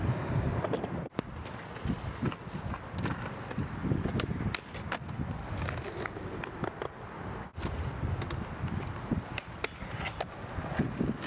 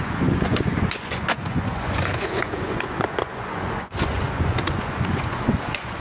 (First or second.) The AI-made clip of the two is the second